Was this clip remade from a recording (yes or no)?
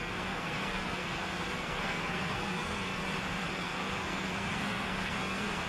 yes